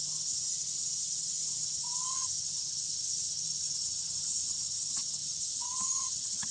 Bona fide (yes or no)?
no